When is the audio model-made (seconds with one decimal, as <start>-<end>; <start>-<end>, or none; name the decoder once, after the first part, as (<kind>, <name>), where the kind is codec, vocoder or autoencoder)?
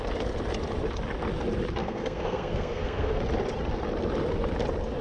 1.8-3.2 (codec, SNAC)